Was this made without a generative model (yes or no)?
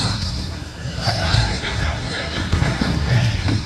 no